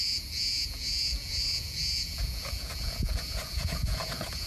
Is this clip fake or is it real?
fake